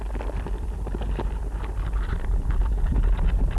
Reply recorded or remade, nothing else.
recorded